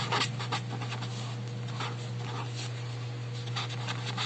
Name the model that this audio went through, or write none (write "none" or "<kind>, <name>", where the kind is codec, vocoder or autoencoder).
none